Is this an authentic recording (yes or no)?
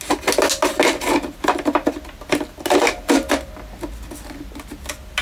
yes